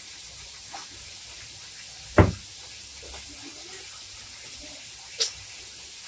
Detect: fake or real real